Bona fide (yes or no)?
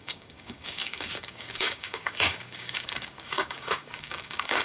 no